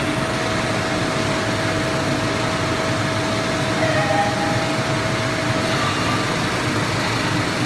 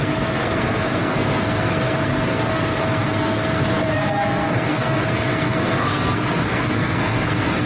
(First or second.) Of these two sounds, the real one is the first